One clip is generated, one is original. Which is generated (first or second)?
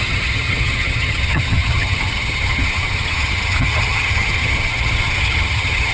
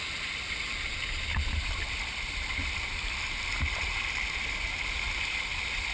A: first